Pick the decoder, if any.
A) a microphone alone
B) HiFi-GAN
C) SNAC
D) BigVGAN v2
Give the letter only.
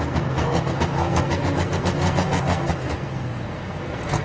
C